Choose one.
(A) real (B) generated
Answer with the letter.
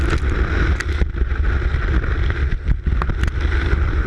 A